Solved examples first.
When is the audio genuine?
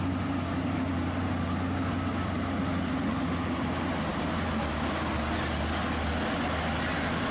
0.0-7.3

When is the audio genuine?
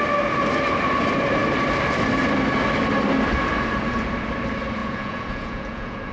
0.0-4.8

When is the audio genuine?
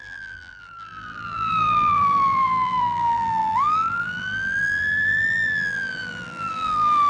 none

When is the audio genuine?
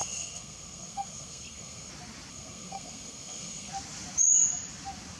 1.9-2.3; 3.7-5.2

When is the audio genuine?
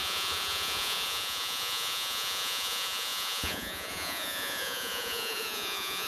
none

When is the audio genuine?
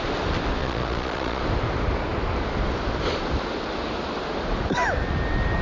0.0-0.6; 1.4-5.6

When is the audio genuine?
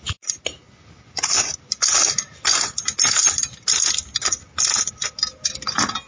0.0-6.1